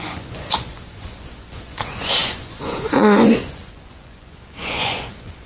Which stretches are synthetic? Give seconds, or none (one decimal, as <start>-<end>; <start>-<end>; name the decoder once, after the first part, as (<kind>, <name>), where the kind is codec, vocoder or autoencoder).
0.0-5.5 (vocoder, Vocos)